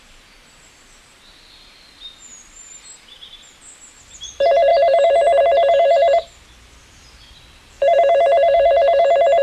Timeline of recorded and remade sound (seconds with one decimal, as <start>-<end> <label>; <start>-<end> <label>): 0.0-4.7 recorded; 4.7-5.4 remade; 5.4-6.8 recorded; 6.8-8.0 remade; 8.0-9.4 recorded